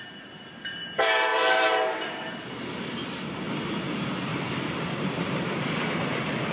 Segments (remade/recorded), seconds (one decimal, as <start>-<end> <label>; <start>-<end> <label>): 0.0-6.5 remade